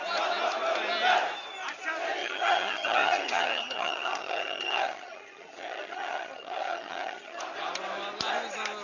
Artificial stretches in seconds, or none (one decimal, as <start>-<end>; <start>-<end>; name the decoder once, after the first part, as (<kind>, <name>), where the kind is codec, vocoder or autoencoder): 2.2-7.4 (vocoder, HiFi-GAN)